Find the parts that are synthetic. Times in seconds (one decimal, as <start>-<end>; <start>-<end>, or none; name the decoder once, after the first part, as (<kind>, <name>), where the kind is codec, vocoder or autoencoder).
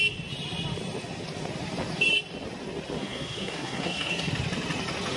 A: 3.0-4.3 (codec, SNAC)